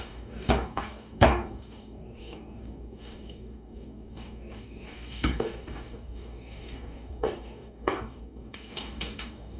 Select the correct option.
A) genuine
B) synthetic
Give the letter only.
B